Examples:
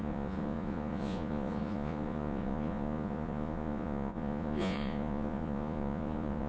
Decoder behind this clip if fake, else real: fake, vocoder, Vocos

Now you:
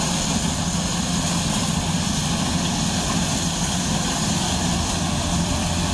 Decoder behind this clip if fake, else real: fake, vocoder, BigVGAN v2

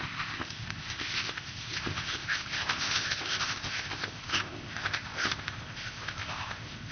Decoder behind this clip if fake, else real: fake, codec, ZipCodec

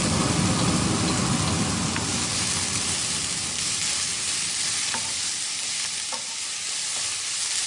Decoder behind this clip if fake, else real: real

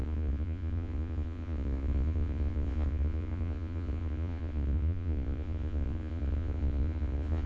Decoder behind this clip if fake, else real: fake, vocoder, Vocos